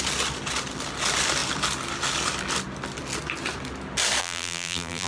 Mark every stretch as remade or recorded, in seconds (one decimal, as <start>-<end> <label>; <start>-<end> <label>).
0.0-4.2 recorded; 4.2-5.1 remade